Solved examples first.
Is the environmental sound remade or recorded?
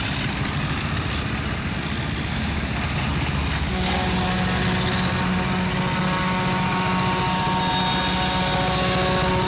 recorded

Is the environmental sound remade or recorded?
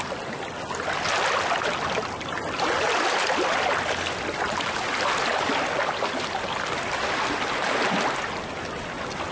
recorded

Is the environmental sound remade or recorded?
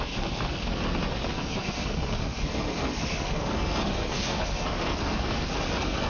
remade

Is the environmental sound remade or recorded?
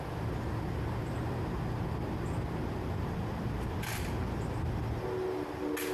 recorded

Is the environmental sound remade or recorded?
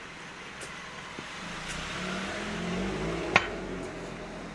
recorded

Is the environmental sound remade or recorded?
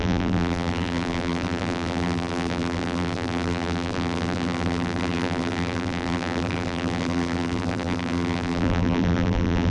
remade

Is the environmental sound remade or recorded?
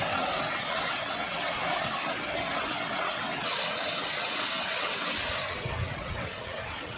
remade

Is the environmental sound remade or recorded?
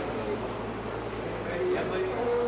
recorded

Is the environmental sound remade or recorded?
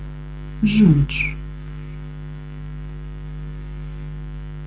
remade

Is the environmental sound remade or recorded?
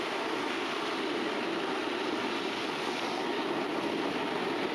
recorded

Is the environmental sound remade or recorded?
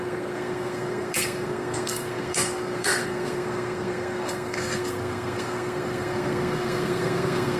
remade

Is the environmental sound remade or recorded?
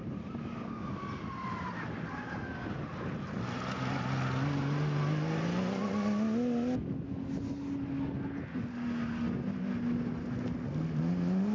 recorded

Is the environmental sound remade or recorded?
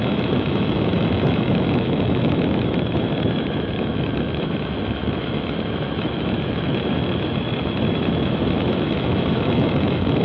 remade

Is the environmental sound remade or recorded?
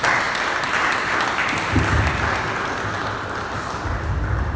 recorded